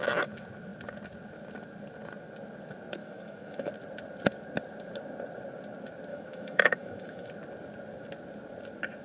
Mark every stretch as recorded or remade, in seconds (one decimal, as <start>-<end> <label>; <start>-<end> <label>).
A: 0.0-3.0 recorded; 3.0-3.7 remade; 3.7-6.1 recorded; 6.1-7.3 remade; 7.3-9.0 recorded